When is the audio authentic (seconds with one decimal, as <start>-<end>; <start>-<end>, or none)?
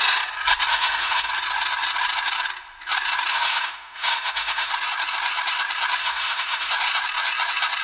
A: 0.0-0.7; 1.3-3.3; 4.7-6.0; 6.7-7.8